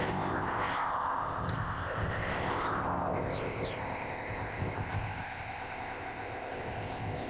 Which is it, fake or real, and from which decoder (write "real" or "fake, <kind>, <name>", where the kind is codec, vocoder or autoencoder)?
fake, codec, ZipCodec